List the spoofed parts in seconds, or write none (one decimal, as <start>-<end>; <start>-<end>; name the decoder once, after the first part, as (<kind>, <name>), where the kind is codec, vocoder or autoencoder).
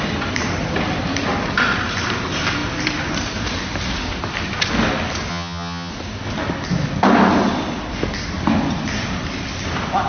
5.3-5.9 (vocoder, HiFi-GAN)